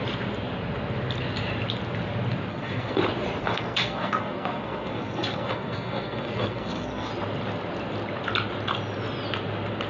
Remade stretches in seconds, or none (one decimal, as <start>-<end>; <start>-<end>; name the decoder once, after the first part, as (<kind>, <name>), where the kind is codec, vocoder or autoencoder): 2.5-3.0 (codec, SNAC); 3.4-7.1